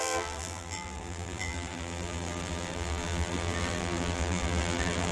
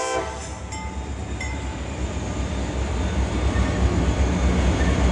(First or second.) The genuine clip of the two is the second